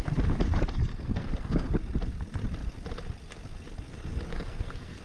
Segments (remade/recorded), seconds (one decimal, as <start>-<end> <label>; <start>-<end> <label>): 0.0-0.9 recorded; 0.9-1.7 remade; 1.7-4.3 recorded; 4.3-5.0 remade